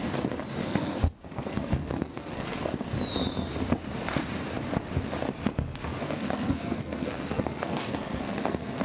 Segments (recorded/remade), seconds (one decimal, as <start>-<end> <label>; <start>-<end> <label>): 0.0-0.6 recorded; 0.6-2.6 remade; 2.6-6.0 recorded; 6.0-8.8 remade